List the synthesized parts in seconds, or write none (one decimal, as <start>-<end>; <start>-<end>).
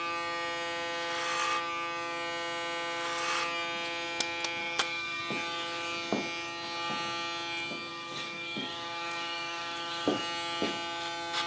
4.6-5.2; 7.9-10.2